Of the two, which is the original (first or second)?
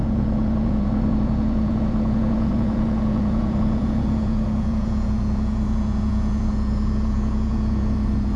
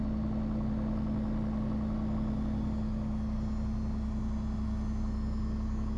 second